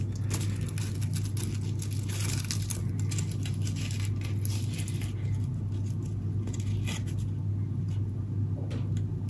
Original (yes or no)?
yes